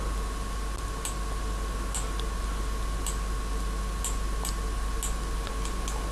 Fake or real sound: real